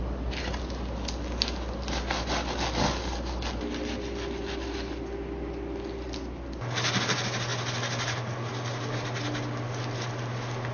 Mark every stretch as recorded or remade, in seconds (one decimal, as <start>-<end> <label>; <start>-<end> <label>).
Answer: 0.0-10.7 recorded